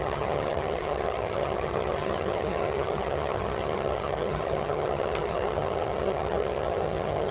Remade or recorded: remade